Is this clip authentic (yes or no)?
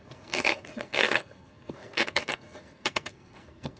no